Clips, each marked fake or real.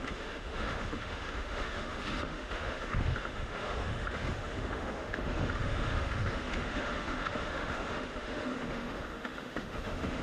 fake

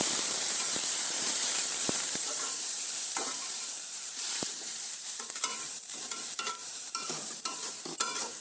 fake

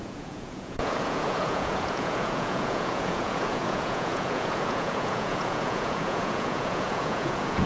fake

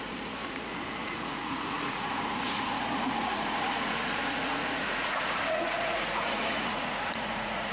fake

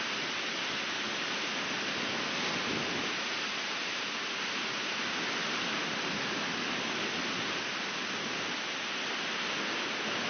real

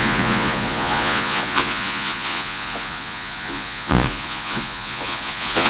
fake